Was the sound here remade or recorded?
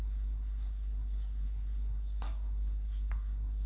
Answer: remade